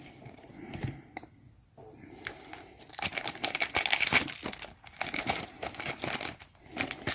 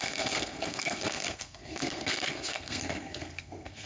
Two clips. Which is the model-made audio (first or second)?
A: second